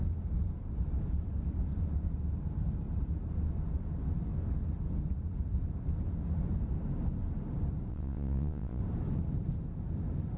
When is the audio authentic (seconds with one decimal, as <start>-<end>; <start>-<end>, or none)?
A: 0.0-7.9; 8.8-10.4